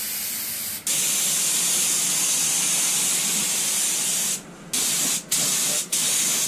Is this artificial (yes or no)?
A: no